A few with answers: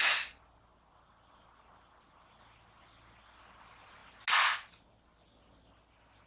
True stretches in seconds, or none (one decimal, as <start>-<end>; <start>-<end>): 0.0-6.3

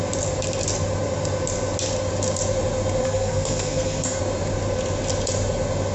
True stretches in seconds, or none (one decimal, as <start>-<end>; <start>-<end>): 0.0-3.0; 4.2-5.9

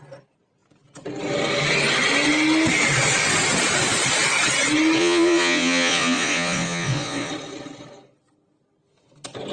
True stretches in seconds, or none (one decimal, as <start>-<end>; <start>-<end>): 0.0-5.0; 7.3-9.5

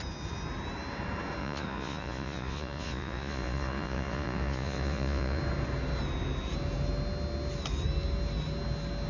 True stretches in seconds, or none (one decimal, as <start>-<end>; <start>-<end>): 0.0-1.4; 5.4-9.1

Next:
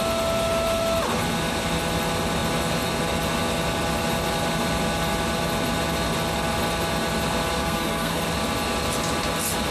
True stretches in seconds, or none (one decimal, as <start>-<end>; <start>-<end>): 0.0-7.6; 8.2-9.7

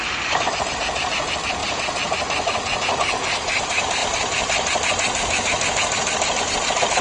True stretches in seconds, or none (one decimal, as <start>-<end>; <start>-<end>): 0.0-7.0

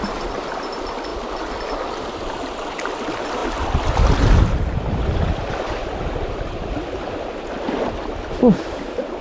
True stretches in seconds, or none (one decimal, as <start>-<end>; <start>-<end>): 0.0-9.2

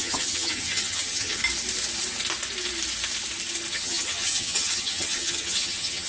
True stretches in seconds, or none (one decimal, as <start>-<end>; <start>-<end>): 1.4-3.7